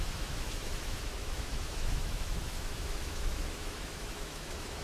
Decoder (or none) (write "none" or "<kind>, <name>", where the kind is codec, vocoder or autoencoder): autoencoder, DAC-VAE